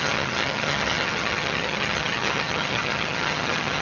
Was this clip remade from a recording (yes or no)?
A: yes